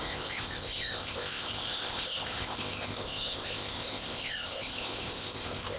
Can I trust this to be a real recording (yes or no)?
no